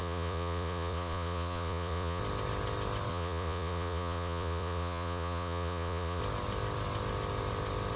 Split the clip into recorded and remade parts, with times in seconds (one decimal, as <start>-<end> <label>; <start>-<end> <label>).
0.0-2.2 remade; 2.2-3.1 recorded; 3.1-6.2 remade; 6.2-8.0 recorded